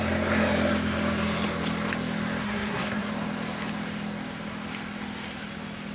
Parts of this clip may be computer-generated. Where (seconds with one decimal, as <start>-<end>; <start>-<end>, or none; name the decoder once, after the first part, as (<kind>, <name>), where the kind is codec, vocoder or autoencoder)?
2.4-3.1 (codec, SNAC)